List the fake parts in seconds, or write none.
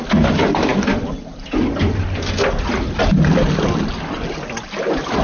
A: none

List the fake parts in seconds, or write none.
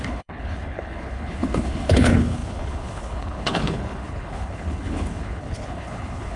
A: 0.0-6.4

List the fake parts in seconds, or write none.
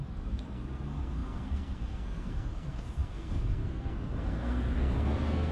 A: 0.0-5.5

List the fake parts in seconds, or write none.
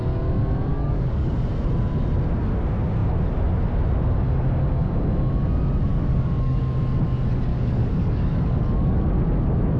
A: 0.7-1.3; 5.9-6.6; 7.5-9.0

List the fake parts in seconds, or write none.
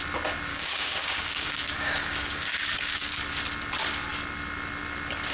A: 0.5-3.1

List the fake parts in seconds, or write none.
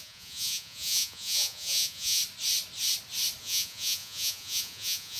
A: 0.0-2.2; 3.4-5.2